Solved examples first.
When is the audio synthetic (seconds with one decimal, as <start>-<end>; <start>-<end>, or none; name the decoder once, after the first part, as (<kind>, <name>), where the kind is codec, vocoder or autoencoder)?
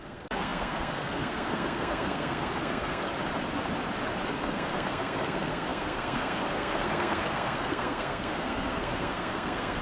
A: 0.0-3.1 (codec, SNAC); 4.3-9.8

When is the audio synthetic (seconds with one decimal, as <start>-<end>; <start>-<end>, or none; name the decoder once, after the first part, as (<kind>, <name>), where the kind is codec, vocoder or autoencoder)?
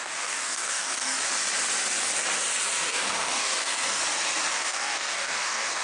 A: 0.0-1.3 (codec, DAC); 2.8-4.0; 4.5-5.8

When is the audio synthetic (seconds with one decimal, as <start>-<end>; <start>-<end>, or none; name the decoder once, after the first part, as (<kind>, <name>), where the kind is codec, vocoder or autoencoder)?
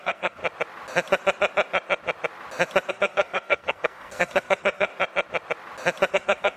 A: 0.0-0.4 (codec, SNAC); 2.9-4.9; 6.1-6.6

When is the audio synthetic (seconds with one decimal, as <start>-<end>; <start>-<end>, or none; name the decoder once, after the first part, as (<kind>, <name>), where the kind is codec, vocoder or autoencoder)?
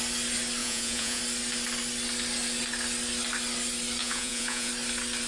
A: 0.6-1.2 (vocoder, Vocos); 4.0-4.7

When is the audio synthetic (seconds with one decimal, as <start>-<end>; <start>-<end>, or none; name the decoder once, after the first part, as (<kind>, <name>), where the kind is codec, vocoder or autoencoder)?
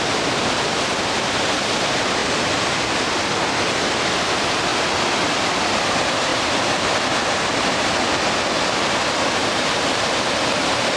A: 2.2-2.7 (vocoder, BigVGAN v2); 6.3-7.1; 9.4-10.2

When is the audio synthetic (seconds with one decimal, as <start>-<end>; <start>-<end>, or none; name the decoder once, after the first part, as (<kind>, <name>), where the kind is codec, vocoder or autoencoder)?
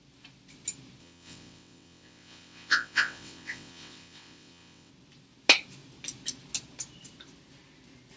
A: 1.0-4.9 (vocoder, WaveNeXt)